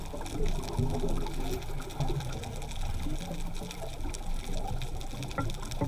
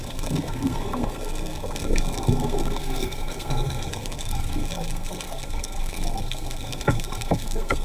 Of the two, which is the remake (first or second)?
second